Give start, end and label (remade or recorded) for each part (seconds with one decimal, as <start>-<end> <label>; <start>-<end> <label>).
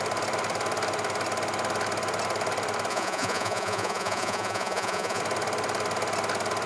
0.0-2.9 recorded; 2.9-5.2 remade; 5.2-6.7 recorded